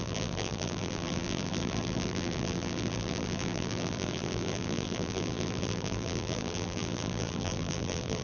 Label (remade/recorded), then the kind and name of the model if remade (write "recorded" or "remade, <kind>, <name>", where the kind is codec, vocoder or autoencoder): remade, vocoder, BigVGAN v2